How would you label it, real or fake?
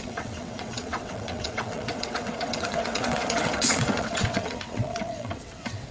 fake